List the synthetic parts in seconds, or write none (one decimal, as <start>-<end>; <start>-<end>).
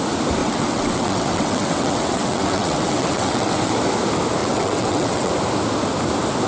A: 0.4-3.7; 4.4-5.3